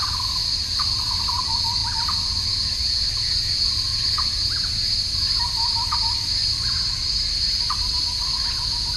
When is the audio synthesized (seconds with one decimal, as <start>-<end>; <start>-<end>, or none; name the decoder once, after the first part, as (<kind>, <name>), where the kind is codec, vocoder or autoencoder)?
none